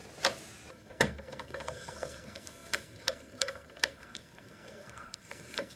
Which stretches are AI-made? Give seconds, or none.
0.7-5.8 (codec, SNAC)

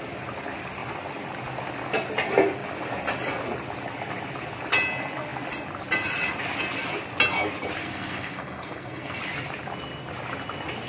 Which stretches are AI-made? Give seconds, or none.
7.8-9.2 (codec, SNAC)